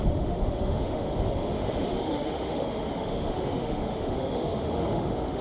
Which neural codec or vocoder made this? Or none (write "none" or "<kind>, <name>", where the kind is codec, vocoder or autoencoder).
autoencoder, DAC-VAE